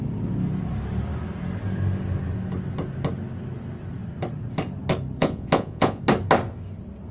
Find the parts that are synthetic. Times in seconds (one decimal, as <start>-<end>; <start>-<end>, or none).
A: 5.2-6.0